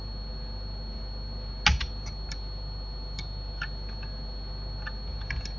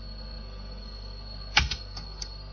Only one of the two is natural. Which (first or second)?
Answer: first